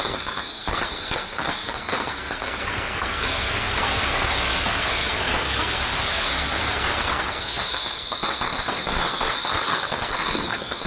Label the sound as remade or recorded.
remade